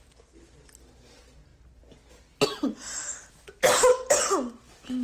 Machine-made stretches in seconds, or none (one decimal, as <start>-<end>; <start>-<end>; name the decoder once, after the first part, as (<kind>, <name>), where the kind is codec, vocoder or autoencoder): none